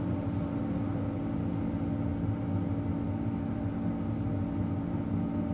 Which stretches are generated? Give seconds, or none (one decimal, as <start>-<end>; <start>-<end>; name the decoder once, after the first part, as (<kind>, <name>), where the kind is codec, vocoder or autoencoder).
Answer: none